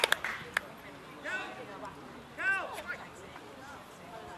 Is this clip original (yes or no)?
yes